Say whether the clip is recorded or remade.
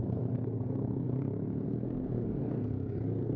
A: remade